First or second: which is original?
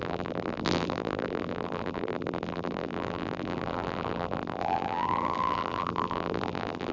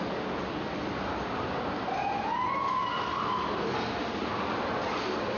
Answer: second